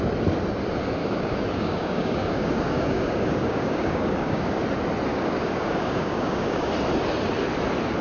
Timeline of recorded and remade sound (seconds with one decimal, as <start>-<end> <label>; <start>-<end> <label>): 0.0-1.0 recorded; 1.0-4.6 remade; 4.6-5.1 recorded; 5.1-6.7 remade; 6.7-8.0 recorded